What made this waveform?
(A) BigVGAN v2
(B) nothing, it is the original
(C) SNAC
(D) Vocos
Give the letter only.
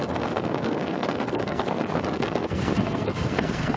C